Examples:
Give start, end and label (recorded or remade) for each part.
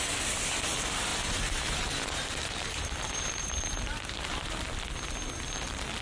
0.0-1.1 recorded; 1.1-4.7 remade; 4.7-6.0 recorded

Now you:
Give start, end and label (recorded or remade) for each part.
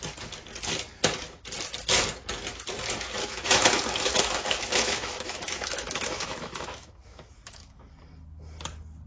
0.0-3.2 recorded; 3.2-7.9 remade; 7.9-9.1 recorded